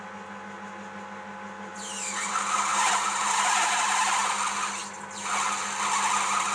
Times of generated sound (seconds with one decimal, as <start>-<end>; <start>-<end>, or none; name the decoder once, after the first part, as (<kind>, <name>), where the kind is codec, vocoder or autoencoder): 1.7-2.3 (vocoder, BigVGAN v2); 2.7-3.7